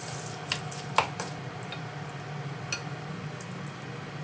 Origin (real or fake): real